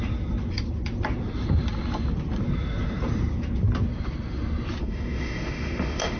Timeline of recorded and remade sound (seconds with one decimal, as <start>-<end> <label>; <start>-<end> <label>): 0.0-4.8 recorded; 4.8-6.2 remade